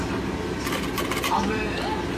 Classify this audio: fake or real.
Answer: real